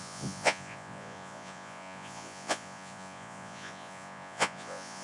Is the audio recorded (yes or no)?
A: no